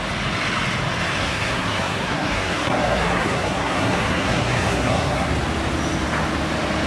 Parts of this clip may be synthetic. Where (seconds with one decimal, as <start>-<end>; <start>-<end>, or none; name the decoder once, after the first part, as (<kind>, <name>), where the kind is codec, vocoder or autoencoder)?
1.2-5.3 (codec, SNAC)